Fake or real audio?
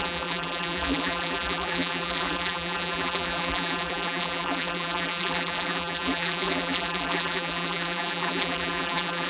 fake